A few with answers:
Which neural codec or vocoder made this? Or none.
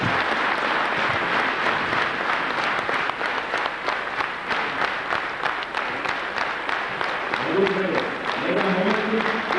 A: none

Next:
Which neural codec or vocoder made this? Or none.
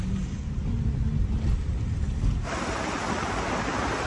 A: none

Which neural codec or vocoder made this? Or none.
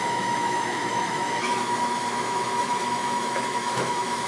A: autoencoder, DAC-VAE